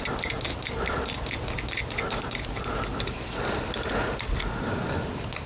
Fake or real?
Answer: real